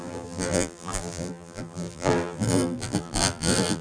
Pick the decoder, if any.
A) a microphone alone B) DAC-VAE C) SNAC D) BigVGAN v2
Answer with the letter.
D